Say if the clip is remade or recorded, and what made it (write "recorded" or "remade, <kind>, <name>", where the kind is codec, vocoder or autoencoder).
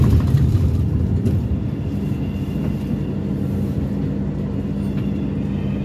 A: recorded